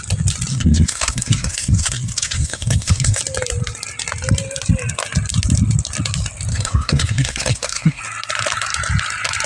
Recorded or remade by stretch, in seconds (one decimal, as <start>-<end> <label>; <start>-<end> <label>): 0.0-0.5 recorded; 0.5-3.2 remade; 3.2-6.5 recorded; 6.5-8.0 remade; 8.0-9.5 recorded